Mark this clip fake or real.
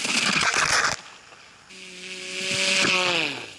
real